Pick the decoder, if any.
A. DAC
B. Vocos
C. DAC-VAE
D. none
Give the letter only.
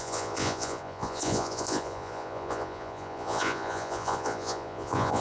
B